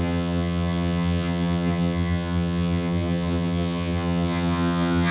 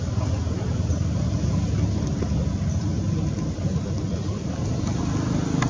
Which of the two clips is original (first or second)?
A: second